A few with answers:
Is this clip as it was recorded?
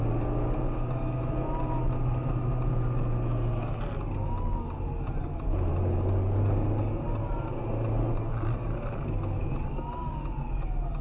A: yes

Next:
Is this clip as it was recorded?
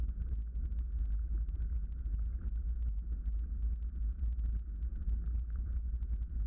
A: yes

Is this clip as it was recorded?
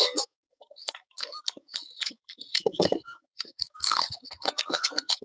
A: no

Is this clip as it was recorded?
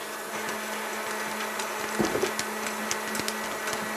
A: yes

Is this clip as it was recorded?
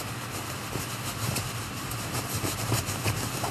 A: yes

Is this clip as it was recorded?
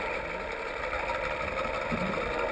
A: yes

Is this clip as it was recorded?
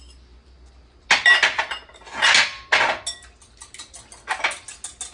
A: yes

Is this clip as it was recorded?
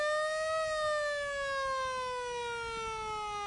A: yes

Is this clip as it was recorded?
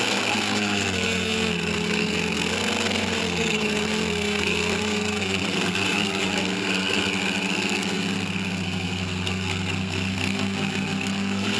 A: no